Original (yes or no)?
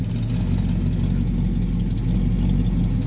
yes